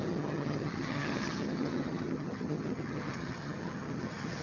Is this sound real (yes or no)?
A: no